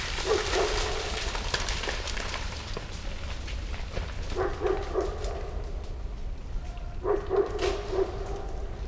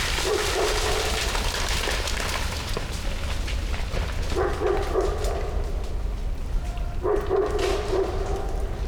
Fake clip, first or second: first